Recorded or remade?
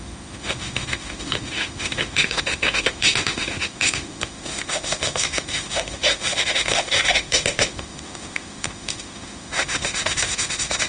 remade